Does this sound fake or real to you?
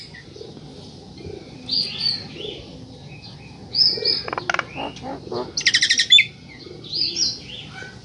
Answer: real